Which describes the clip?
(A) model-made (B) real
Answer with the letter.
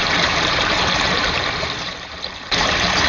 A